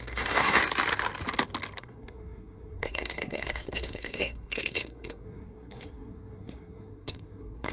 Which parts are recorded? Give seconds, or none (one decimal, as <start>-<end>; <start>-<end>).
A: 0.6-1.8